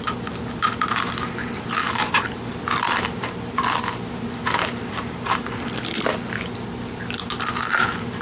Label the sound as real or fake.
real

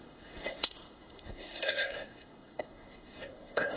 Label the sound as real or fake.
fake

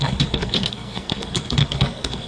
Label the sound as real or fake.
fake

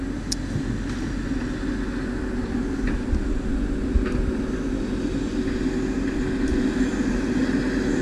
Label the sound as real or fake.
real